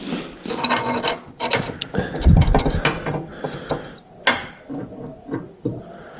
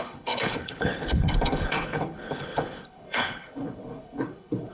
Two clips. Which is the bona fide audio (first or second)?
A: first